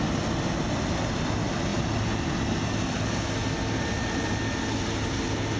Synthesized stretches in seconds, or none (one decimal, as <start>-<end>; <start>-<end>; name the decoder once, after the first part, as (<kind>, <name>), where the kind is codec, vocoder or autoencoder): none